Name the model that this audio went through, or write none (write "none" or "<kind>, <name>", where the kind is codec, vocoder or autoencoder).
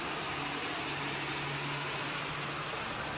none